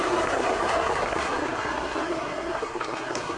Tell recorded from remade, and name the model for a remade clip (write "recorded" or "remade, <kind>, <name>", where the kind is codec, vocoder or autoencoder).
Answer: remade, codec, SNAC